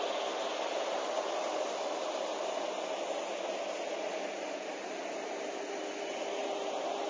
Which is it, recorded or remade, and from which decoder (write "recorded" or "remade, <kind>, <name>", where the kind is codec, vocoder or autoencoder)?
recorded